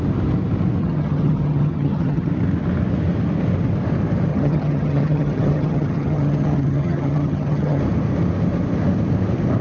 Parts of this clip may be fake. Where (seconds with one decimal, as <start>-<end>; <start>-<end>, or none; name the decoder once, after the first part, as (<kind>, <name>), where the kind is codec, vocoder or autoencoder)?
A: 0.8-2.3 (vocoder, HiFi-GAN); 4.3-7.8

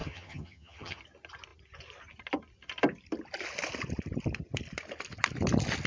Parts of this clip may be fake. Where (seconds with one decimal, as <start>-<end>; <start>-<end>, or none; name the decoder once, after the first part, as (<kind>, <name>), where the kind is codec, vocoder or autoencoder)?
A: 0.0-1.0 (vocoder, HiFi-GAN)

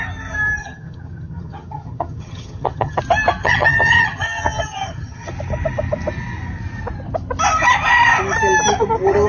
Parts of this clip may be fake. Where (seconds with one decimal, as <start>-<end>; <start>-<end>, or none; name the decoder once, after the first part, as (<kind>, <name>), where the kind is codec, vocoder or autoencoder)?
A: 0.6-3.0 (vocoder, HiFi-GAN); 3.4-5.3

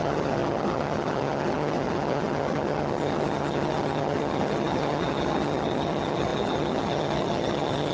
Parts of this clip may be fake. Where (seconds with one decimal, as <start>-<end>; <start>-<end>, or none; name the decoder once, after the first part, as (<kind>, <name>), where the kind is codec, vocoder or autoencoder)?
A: 0.0-7.9 (vocoder, HiFi-GAN)

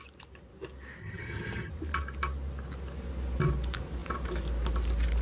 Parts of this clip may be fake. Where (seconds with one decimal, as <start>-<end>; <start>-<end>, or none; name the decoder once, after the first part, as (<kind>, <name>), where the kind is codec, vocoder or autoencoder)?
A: 1.0-1.7 (vocoder, HiFi-GAN)